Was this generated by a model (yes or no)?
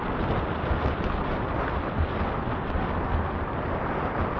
no